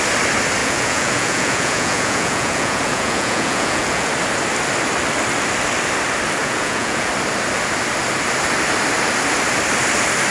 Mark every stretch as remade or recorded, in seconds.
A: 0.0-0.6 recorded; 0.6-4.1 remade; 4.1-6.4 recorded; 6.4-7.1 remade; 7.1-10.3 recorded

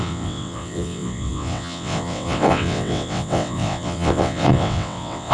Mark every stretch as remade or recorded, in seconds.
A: 0.0-5.3 remade

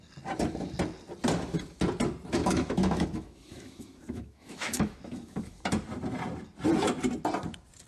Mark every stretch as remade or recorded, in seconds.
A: 0.0-2.4 recorded; 2.4-5.6 remade; 5.6-7.9 recorded

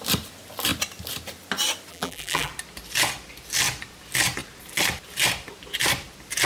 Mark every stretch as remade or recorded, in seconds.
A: 0.0-1.9 recorded; 1.9-2.5 remade; 2.5-6.5 recorded

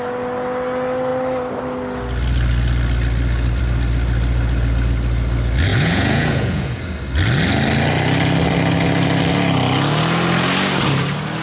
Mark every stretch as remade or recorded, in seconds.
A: 0.0-5.7 recorded; 5.7-6.8 remade; 6.8-11.4 recorded

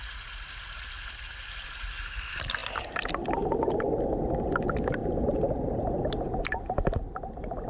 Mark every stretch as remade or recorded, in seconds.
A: 0.0-7.7 recorded